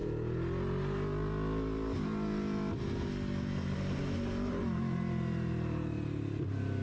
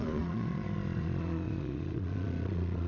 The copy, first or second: second